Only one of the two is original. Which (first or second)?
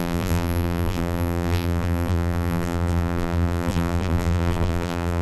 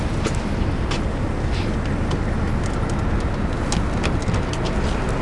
second